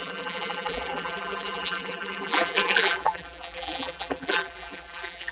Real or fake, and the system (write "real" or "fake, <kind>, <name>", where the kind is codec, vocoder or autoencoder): fake, vocoder, BigVGAN v2